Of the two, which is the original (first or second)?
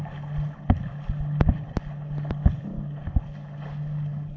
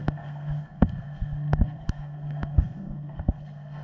first